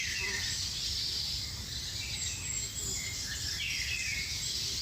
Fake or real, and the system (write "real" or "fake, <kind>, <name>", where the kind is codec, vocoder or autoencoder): real